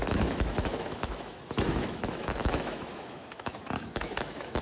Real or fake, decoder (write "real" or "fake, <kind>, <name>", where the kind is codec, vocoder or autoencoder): fake, autoencoder, DAC-VAE